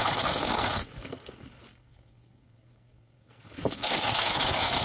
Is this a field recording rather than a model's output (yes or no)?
no